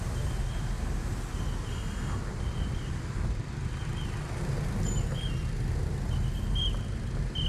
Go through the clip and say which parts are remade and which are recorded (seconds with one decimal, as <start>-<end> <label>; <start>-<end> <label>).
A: 0.0-1.7 recorded; 1.7-2.2 remade; 2.2-7.5 recorded